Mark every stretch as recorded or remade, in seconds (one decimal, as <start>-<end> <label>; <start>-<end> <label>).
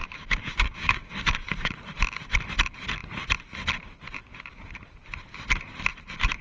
0.0-1.7 remade; 1.7-6.4 recorded